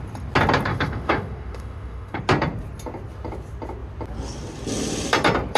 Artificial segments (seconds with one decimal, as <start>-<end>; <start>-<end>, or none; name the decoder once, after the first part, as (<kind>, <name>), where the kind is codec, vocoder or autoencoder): 0.7-2.2 (autoencoder, DAC-VAE)